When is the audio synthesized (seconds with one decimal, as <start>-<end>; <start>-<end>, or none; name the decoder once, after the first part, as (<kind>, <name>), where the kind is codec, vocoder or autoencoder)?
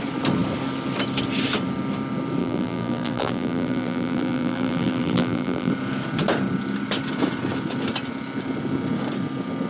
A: 2.4-5.7 (vocoder, BigVGAN v2)